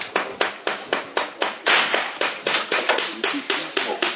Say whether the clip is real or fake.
real